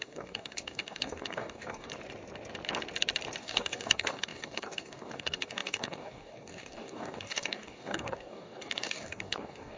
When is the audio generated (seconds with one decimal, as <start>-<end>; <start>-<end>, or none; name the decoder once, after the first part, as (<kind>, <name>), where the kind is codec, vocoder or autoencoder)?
0.0-1.9 (codec, DAC); 3.4-9.8